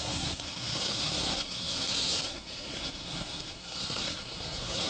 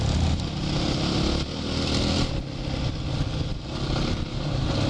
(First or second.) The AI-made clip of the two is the first